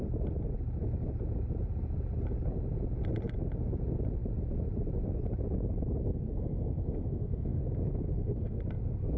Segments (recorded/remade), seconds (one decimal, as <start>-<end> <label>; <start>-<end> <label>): 0.0-6.0 recorded; 6.0-7.6 remade; 7.6-8.1 recorded; 8.1-8.6 remade; 8.6-9.2 recorded